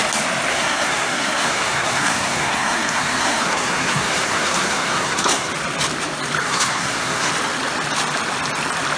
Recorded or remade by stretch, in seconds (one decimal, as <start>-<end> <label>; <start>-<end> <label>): 0.0-0.5 recorded; 0.5-5.5 remade; 5.5-6.4 recorded; 6.4-7.3 remade; 7.3-9.0 recorded